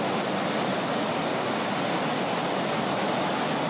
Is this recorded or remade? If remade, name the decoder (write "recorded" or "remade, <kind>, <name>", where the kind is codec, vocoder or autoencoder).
recorded